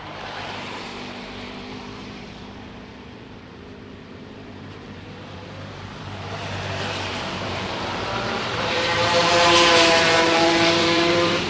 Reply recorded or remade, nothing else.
remade